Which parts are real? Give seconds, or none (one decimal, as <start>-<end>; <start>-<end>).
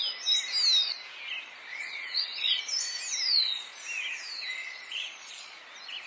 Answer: 0.0-1.7; 2.6-4.6; 5.6-6.1